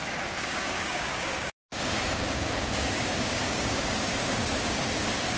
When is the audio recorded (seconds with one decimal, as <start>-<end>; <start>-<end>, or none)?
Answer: none